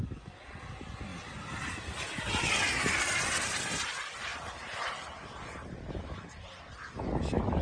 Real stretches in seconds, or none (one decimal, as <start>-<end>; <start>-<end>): 0.0-7.6